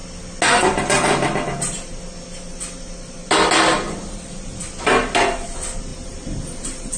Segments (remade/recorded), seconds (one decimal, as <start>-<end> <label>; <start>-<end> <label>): 0.0-5.9 recorded; 5.9-7.0 remade